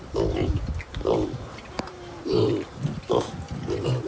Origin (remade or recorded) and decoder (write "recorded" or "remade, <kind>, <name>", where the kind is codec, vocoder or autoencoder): remade, vocoder, BigVGAN v2